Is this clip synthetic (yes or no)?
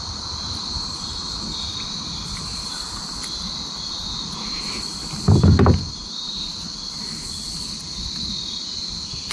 no